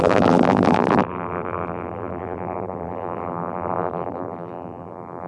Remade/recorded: remade